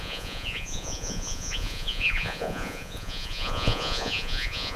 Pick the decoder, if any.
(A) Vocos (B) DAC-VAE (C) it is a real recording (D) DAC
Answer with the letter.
A